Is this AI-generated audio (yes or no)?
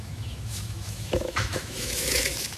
yes